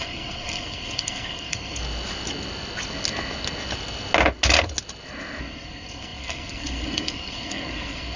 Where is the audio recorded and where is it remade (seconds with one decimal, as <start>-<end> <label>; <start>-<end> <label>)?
0.0-1.8 remade; 1.8-5.4 recorded; 5.4-8.2 remade